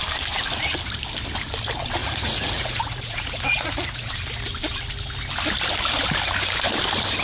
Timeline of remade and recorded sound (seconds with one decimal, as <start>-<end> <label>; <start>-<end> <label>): 0.0-2.0 recorded; 2.0-4.1 remade; 4.1-7.2 recorded